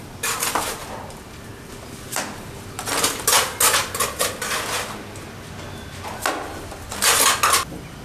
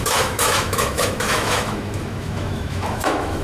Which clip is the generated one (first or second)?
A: second